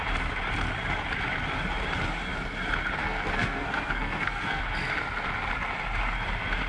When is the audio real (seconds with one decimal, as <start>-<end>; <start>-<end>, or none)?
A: 0.0-3.0; 4.6-6.7